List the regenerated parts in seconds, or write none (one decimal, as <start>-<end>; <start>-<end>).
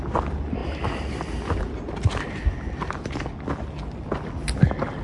none